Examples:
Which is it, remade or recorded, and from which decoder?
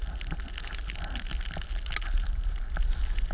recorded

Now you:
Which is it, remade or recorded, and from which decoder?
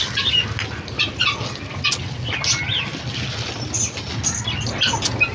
recorded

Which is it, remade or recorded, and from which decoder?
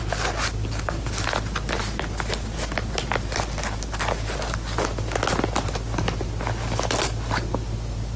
recorded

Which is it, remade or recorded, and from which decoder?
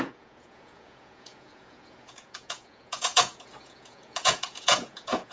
remade, vocoder, Vocos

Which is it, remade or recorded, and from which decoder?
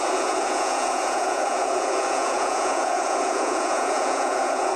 remade, vocoder, Vocos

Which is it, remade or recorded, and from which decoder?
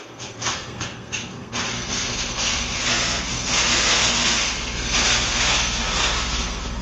remade, codec, SNAC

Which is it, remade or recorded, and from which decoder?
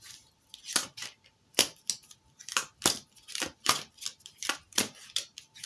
recorded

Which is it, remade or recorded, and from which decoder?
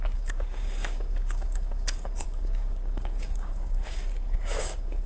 remade, codec, DAC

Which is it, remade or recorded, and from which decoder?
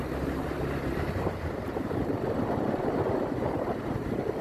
remade, vocoder, BigVGAN v2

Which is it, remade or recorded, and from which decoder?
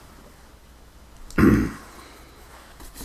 recorded